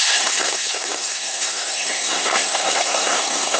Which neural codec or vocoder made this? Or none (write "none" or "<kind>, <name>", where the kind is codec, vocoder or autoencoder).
codec, SNAC